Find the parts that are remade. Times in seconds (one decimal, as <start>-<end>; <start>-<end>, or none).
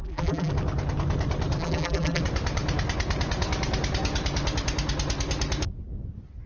0.0-0.5; 1.6-2.2